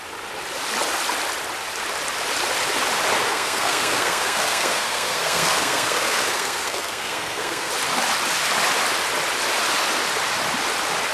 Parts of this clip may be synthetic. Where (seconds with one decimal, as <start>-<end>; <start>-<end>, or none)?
3.3-7.7